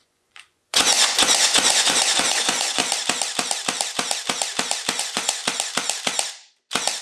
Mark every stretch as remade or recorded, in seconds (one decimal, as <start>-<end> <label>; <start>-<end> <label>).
0.0-2.8 remade; 2.8-5.0 recorded; 5.0-5.4 remade; 5.4-7.0 recorded